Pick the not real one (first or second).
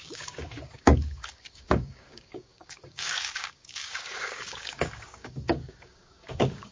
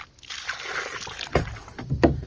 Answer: first